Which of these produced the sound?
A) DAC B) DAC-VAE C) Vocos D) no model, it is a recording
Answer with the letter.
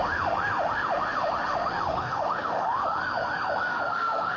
B